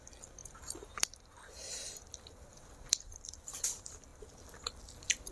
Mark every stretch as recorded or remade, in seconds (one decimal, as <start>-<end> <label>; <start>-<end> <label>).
0.0-4.1 recorded; 4.1-5.3 remade